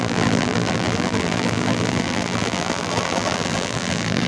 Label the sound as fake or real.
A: fake